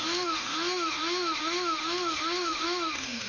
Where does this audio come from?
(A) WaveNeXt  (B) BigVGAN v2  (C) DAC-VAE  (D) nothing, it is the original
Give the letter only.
C